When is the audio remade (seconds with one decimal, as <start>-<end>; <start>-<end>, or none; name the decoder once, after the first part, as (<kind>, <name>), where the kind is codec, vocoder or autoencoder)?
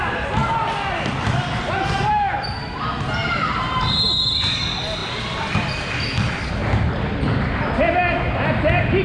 none